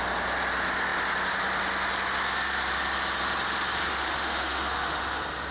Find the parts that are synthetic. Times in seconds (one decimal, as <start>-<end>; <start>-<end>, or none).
3.9-5.0